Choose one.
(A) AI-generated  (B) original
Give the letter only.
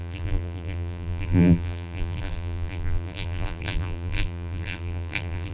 A